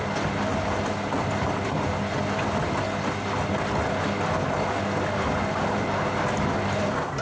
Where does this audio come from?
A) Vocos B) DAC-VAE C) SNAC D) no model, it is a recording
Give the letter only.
D